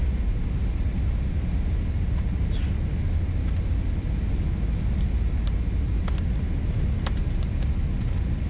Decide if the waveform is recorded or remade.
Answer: recorded